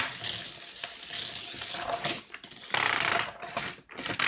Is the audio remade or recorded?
recorded